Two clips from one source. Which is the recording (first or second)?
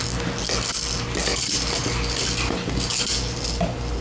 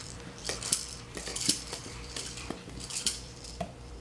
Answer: first